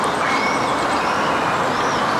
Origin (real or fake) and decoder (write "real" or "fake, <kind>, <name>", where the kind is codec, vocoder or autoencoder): real